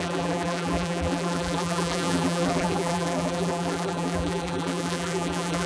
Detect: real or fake fake